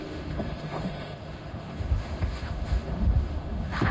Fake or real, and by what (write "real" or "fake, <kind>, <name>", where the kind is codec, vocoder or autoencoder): fake, autoencoder, DAC-VAE